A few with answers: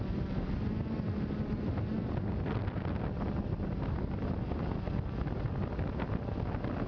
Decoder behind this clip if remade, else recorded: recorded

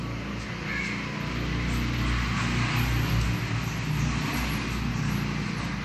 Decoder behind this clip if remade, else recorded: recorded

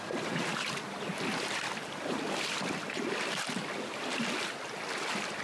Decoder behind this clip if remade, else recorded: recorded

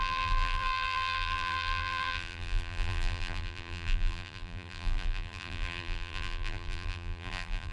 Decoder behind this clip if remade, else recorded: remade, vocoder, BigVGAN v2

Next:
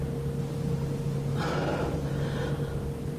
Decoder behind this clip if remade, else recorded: recorded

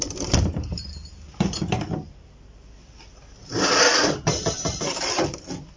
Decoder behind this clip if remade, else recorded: remade, vocoder, BigVGAN v2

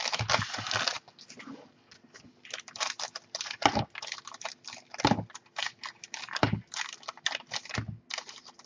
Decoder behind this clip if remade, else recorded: recorded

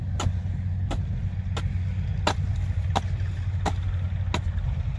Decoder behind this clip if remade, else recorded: recorded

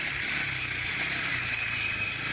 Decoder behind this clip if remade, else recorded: recorded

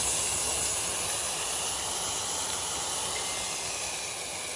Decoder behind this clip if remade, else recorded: recorded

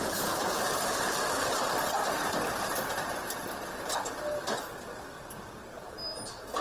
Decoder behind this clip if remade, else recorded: recorded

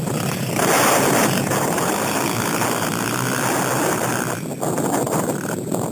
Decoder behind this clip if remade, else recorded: remade, vocoder, BigVGAN v2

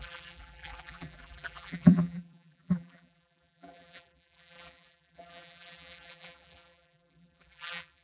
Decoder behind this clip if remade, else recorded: remade, vocoder, BigVGAN v2